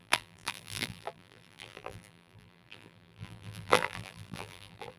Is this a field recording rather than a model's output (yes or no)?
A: no